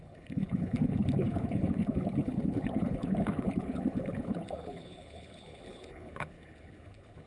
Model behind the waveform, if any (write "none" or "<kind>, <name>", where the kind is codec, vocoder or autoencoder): codec, HILCodec